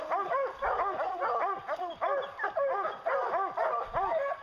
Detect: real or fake real